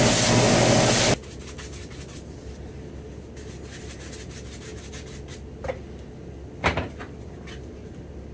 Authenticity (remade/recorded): recorded